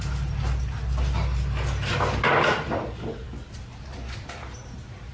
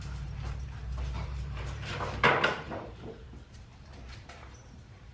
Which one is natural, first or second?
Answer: first